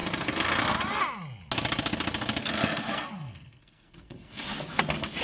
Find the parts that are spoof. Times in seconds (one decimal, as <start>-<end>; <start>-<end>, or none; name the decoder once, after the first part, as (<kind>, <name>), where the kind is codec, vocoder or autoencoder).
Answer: 2.4-4.8 (codec, SNAC)